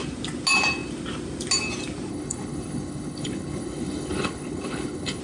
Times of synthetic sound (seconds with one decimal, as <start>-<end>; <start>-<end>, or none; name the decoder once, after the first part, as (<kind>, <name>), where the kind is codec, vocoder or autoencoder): 2.1-5.2 (codec, HILCodec)